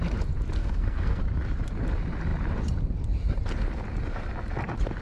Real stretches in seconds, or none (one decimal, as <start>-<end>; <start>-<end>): 0.0-0.6; 1.2-5.0